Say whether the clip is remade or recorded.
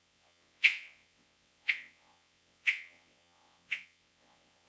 remade